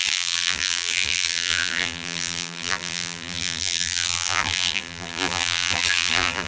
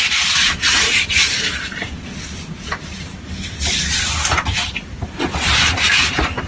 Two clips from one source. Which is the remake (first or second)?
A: first